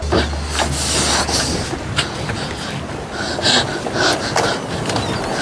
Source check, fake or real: real